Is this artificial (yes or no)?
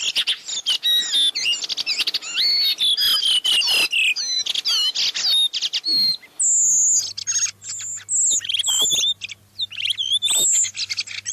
no